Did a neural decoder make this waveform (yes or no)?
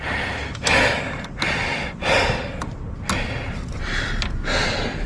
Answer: no